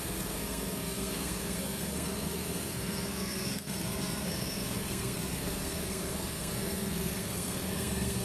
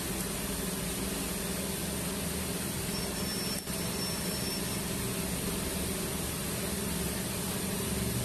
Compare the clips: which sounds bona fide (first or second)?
second